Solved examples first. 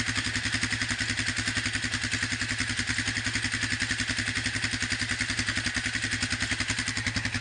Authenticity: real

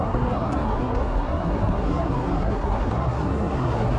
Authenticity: fake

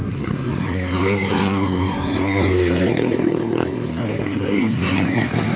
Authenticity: fake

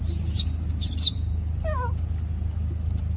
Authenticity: real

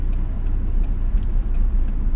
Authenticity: real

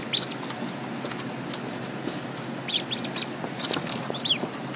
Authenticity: real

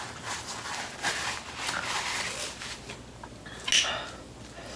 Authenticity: real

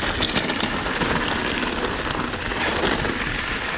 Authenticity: real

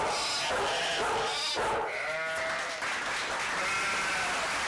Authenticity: real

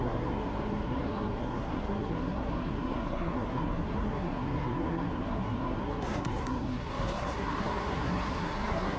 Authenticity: fake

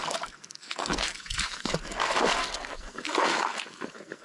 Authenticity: fake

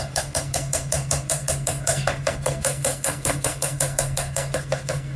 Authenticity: fake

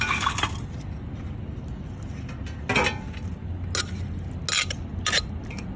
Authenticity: real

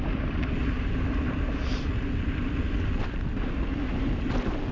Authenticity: real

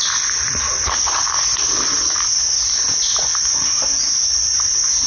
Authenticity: real